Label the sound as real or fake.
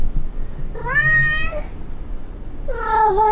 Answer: real